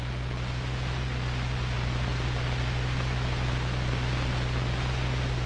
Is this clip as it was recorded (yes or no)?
yes